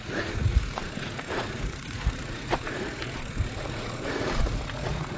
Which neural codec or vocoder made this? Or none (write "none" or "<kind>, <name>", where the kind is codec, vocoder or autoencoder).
vocoder, Vocos